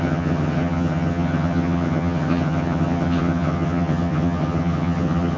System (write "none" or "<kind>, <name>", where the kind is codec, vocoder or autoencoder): vocoder, HiFi-GAN